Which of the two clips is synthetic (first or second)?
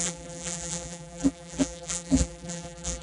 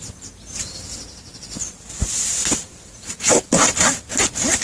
first